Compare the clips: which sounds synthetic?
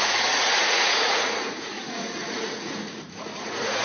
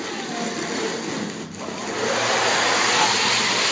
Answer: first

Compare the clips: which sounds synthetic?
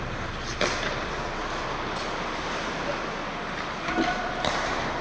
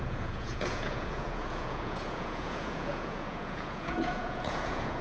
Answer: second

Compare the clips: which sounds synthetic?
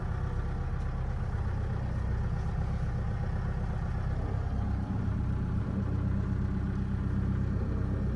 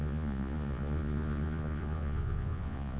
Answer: second